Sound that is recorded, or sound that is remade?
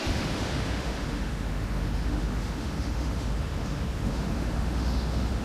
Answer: remade